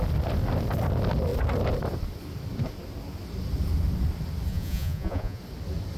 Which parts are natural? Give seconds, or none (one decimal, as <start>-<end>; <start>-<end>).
0.0-4.5; 5.4-6.0